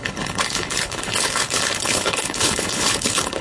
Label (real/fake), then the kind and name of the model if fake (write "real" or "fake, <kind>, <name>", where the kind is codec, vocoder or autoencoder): fake, codec, HILCodec